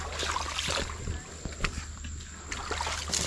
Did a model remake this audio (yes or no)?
no